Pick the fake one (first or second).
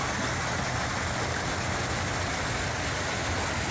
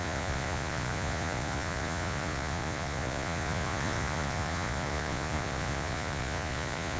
second